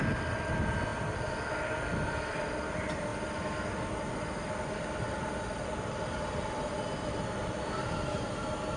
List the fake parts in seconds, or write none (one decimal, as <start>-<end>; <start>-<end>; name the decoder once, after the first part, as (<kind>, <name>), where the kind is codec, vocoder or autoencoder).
none